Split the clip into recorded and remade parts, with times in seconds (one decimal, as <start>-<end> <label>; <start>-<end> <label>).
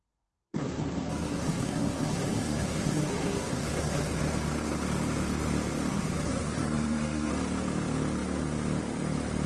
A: 0.0-4.2 remade; 4.2-5.9 recorded; 5.9-7.3 remade; 7.3-9.5 recorded